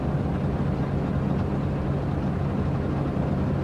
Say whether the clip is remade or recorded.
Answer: recorded